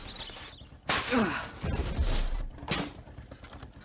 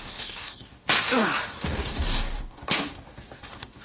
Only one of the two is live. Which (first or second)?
first